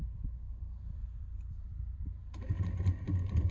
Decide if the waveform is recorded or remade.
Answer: recorded